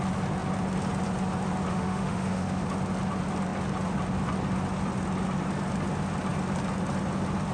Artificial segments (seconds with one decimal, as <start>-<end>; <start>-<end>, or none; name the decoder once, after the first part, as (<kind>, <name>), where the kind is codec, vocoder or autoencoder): 1.7-2.6 (autoencoder, DAC-VAE)